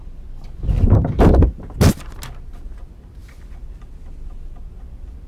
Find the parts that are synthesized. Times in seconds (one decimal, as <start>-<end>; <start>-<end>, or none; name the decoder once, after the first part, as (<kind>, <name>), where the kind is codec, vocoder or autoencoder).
none